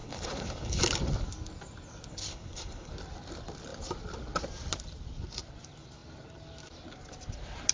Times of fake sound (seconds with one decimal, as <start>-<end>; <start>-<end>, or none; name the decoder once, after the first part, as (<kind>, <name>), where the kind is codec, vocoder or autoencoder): 0.0-0.8 (codec, HILCodec); 2.1-2.9